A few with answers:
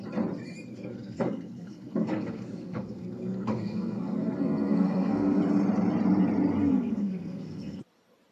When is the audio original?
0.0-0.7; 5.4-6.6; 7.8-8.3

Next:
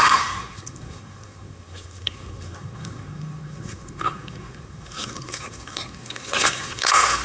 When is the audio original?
none

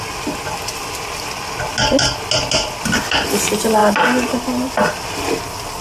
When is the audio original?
0.0-5.8

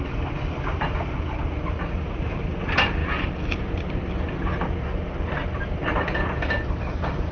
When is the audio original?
0.0-7.3